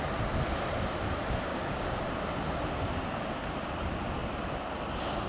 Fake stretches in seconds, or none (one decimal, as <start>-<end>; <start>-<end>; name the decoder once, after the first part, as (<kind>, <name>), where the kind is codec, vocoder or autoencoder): 1.5-2.1 (codec, DAC)